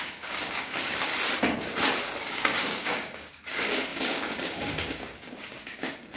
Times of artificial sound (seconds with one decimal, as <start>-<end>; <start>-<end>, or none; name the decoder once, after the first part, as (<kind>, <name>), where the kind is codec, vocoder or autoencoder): 0.0-1.1 (codec, DAC); 2.2-6.2